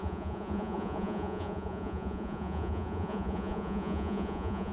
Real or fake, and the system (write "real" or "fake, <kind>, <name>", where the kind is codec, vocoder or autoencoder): fake, vocoder, Vocos